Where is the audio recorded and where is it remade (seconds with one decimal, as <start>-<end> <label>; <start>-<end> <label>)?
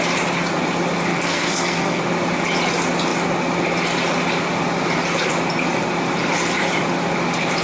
0.0-1.1 recorded; 1.1-2.0 remade; 2.0-7.6 recorded